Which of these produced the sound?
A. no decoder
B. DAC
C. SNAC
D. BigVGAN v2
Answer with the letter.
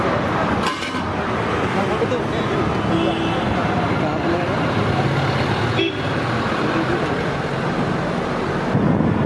A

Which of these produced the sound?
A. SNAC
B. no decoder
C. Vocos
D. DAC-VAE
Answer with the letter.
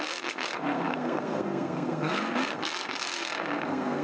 A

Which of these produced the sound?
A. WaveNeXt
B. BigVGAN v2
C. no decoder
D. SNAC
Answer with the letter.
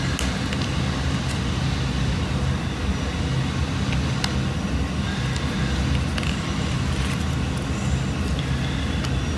C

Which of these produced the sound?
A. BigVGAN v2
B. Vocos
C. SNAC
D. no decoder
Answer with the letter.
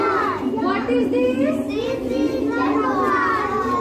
A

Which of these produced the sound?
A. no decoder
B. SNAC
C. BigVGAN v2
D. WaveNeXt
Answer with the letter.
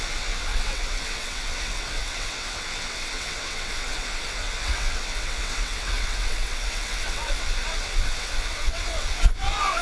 D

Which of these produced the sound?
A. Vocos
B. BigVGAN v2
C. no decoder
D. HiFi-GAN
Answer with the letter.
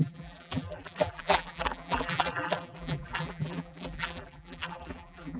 B